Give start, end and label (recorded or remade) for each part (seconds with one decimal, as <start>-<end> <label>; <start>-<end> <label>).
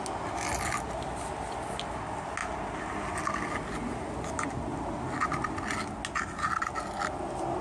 0.0-7.6 recorded